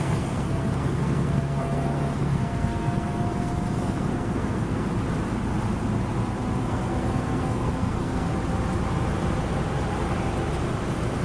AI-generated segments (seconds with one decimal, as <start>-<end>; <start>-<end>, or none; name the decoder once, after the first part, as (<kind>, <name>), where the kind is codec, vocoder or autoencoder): 0.0-4.9 (codec, SNAC); 6.6-8.3